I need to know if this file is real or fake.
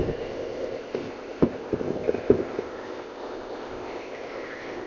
fake